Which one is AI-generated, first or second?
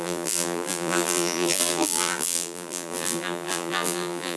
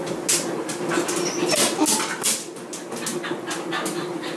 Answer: first